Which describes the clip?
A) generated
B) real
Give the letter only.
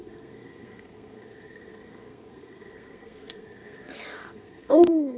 A